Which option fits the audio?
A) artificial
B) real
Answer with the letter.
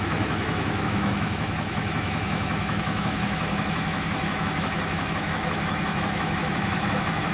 A